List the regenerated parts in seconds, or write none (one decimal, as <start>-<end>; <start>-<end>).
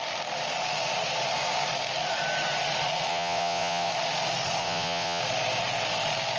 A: 3.1-3.9; 4.6-5.2